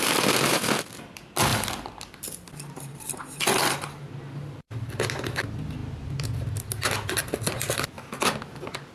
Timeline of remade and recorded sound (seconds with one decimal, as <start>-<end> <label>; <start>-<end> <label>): 0.0-1.5 recorded; 1.5-5.2 remade; 5.2-5.8 recorded; 5.8-7.2 remade; 7.2-8.9 recorded